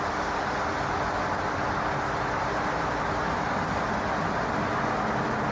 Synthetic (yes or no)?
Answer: no